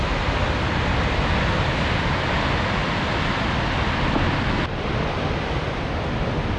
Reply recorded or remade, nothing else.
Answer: recorded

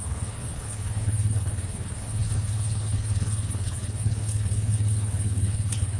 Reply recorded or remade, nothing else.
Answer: remade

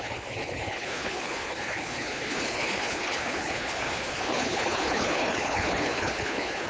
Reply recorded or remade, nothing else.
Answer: remade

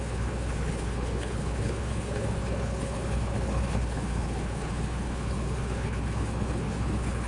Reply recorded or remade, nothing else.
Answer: remade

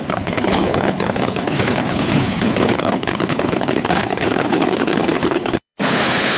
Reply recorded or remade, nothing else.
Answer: remade